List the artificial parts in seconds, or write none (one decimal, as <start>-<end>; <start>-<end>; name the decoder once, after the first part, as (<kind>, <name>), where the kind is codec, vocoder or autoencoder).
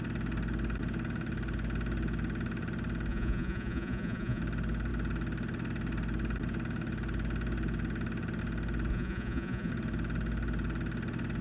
3.1-4.4 (vocoder, Vocos); 8.9-9.7